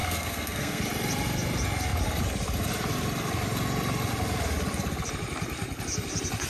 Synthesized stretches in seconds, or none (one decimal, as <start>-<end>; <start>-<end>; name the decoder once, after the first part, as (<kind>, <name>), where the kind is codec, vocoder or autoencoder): 0.0-0.8 (codec, SNAC)